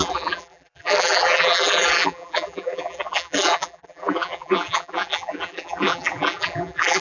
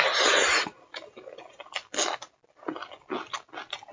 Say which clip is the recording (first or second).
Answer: second